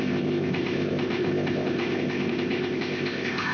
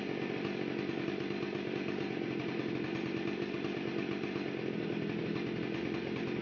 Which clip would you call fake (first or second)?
first